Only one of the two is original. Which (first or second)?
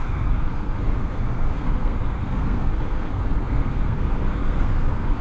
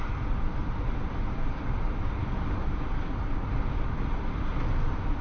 second